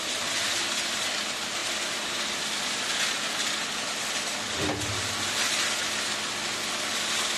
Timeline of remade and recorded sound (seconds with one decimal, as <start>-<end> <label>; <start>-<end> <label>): 0.0-7.4 recorded